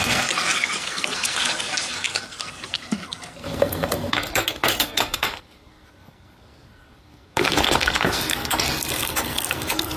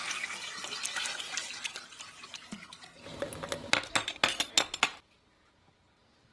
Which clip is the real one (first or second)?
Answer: second